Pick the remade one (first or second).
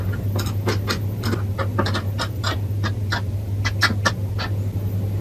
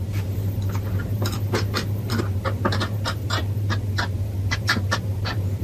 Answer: second